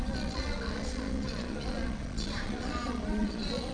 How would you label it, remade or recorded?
remade